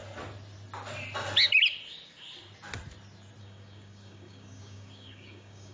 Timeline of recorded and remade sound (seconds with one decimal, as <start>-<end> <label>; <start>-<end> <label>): 0.0-3.4 recorded; 3.4-5.7 remade